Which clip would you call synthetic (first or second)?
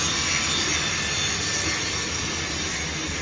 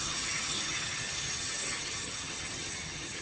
second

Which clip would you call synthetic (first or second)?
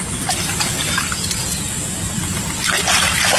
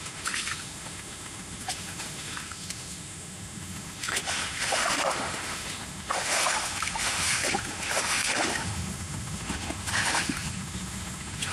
second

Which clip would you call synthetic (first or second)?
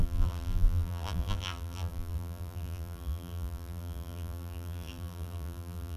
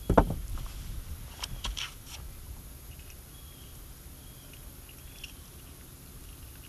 first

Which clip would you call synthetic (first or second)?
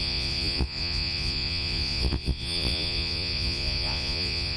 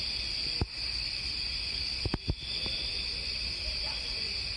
first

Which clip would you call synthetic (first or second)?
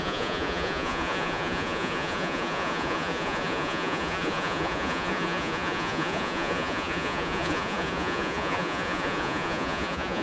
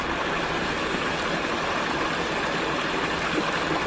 first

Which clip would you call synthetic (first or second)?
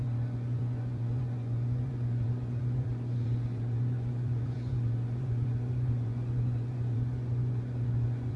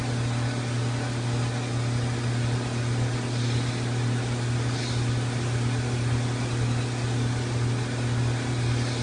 first